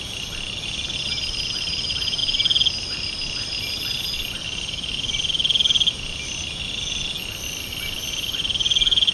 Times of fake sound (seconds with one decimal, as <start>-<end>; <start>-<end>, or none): none